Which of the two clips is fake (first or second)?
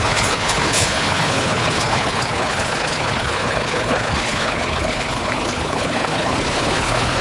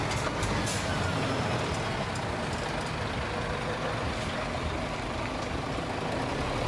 first